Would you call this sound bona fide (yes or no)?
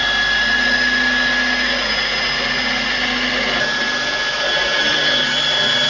yes